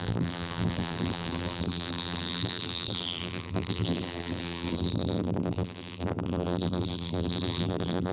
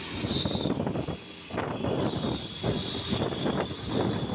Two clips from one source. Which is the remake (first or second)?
first